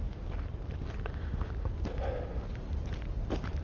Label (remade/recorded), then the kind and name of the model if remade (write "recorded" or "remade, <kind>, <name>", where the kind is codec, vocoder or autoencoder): recorded